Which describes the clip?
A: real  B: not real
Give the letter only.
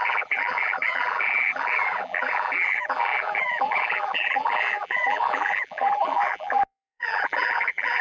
B